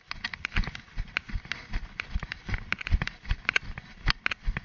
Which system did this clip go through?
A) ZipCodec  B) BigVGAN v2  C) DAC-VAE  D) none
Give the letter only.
D